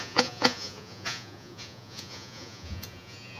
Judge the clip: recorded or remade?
remade